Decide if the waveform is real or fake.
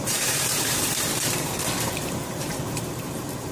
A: fake